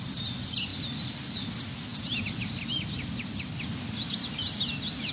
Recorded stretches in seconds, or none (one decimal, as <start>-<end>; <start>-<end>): 0.0-0.7; 1.2-1.9